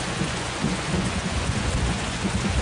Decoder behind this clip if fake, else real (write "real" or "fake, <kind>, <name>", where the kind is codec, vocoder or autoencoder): fake, vocoder, Vocos